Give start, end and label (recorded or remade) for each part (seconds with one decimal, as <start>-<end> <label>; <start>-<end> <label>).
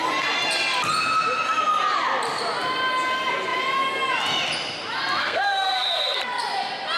0.0-5.2 recorded; 5.2-6.2 remade; 6.2-7.0 recorded